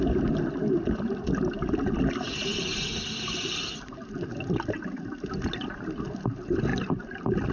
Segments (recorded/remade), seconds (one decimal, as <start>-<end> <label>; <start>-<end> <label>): 0.0-7.5 recorded

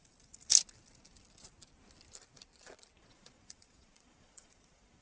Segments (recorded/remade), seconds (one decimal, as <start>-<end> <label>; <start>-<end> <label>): 0.0-3.0 recorded; 3.0-5.0 remade

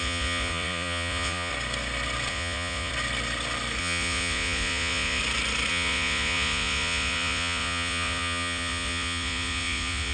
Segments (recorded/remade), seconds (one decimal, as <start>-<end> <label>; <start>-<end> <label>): 0.0-1.5 remade; 1.5-2.3 recorded; 2.3-2.9 remade; 2.9-3.8 recorded; 3.8-5.2 remade; 5.2-5.7 recorded; 5.7-10.1 remade

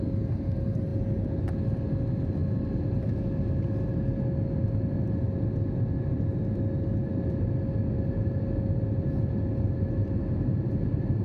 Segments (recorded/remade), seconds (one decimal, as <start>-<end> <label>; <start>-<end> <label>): 0.0-11.2 recorded